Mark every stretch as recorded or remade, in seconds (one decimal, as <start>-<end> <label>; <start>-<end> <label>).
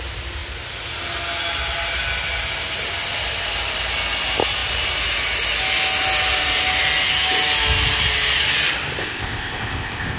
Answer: 0.0-9.0 recorded; 9.0-10.2 remade